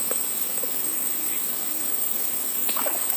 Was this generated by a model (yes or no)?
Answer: yes